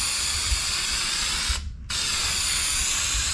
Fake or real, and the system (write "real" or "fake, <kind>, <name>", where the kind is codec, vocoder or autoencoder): real